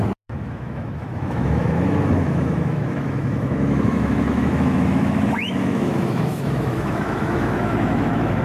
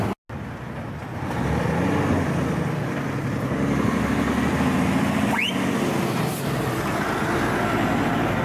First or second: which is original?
second